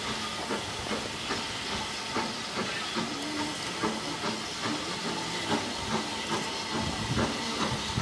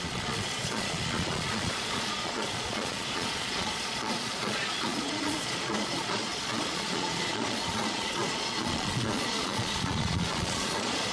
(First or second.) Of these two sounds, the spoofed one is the second